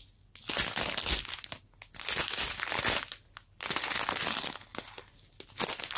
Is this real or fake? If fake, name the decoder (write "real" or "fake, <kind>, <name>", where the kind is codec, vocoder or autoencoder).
real